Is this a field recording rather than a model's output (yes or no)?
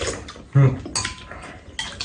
yes